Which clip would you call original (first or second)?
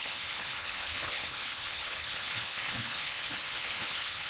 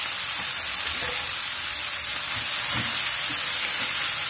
second